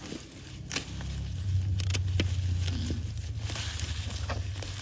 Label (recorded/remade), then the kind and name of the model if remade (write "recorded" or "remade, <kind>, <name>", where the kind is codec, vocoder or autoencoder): recorded